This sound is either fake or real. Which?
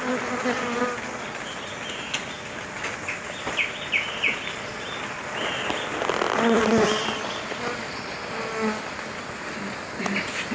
real